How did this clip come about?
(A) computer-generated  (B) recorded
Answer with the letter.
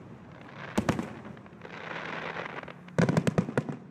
B